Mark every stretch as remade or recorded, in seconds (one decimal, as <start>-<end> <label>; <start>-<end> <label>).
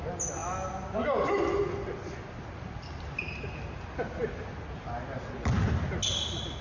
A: 0.0-6.6 recorded